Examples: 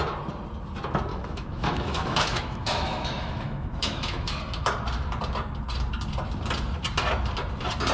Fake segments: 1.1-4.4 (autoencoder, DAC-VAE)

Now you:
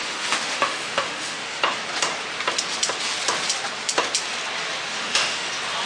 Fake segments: 0.0-1.6 (autoencoder, DAC-VAE); 4.9-5.5

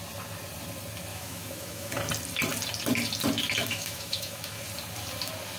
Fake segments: 1.1-2.0 (autoencoder, DAC-VAE); 3.6-4.6

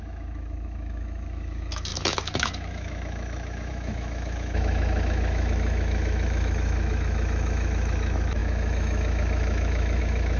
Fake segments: 0.0-10.4 (autoencoder, DAC-VAE)